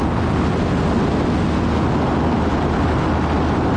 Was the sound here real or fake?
real